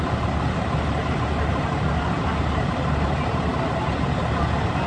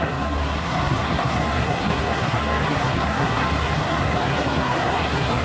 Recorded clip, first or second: first